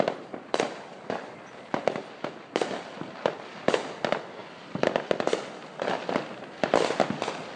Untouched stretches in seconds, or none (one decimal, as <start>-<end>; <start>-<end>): 0.0-7.6